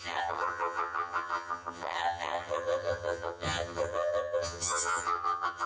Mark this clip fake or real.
fake